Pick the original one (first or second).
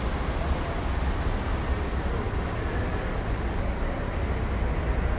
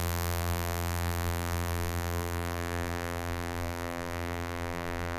first